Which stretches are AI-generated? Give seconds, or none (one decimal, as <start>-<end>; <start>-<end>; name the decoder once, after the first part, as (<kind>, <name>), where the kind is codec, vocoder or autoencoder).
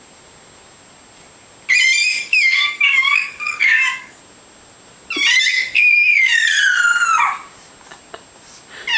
2.0-4.2 (codec, DAC); 5.5-6.4